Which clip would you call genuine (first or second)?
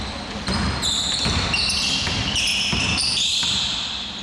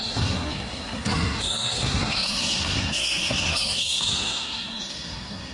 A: first